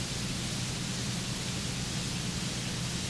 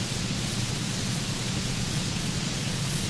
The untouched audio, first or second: first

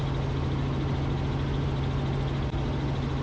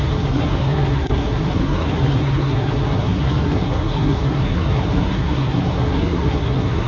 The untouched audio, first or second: first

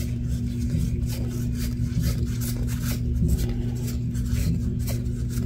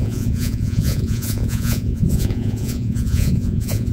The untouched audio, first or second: first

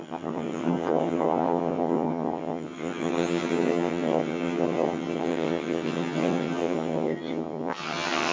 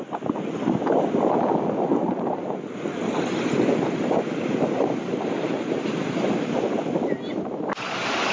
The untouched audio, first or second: second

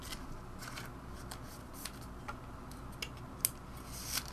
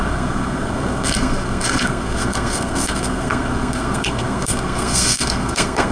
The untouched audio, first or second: first